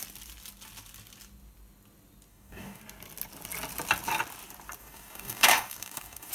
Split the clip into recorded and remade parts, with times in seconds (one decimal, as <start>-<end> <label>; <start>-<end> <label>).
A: 0.0-2.3 recorded; 2.3-2.8 remade; 2.8-4.8 recorded; 4.8-6.3 remade

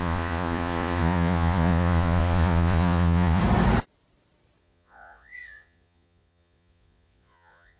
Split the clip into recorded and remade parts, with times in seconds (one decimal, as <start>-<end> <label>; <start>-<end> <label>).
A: 0.0-3.4 remade; 3.4-4.6 recorded; 4.6-7.8 remade

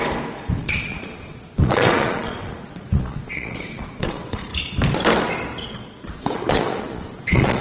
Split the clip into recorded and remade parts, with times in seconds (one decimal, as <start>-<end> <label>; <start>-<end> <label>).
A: 0.0-0.6 recorded; 0.6-4.5 remade; 4.5-5.7 recorded; 5.7-7.6 remade

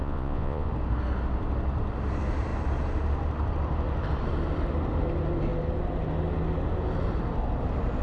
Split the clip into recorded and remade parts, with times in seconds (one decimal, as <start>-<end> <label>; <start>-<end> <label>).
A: 0.0-0.7 remade; 0.7-8.0 recorded

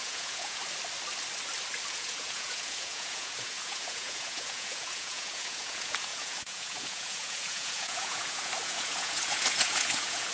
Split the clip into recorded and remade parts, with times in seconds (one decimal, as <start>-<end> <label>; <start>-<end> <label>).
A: 0.0-0.6 remade; 0.6-1.9 recorded; 1.9-10.3 remade

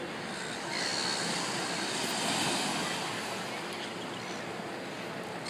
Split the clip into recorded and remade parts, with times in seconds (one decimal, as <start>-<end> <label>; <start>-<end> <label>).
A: 0.0-5.5 recorded